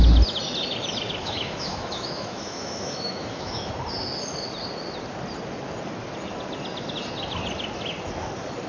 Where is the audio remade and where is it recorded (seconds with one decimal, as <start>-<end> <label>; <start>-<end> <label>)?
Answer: 0.0-1.2 recorded; 1.2-3.7 remade; 3.7-8.7 recorded